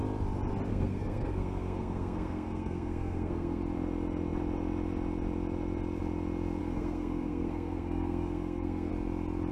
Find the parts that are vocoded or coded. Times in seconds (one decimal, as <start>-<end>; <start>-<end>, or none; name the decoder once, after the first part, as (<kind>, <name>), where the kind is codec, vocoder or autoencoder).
0.7-3.6 (codec, SNAC); 6.6-8.9